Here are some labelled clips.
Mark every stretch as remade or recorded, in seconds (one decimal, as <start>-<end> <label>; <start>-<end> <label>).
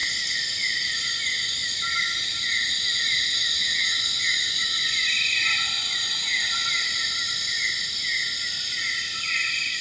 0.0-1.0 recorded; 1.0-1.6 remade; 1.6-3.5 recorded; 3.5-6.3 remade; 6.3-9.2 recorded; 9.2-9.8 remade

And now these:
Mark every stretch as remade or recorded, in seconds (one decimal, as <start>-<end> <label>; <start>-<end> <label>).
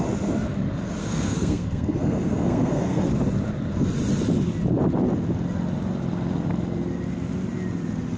0.0-1.0 recorded; 1.0-3.1 remade; 3.1-8.2 recorded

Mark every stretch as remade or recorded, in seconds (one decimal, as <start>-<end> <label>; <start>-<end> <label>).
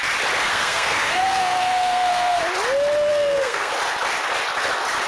0.0-0.5 recorded; 0.5-2.4 remade; 2.4-3.1 recorded; 3.1-3.7 remade; 3.7-5.1 recorded